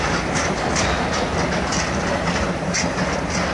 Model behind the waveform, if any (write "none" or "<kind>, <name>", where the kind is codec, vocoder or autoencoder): none